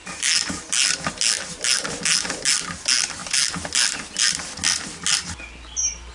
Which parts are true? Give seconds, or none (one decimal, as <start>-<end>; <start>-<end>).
0.6-6.1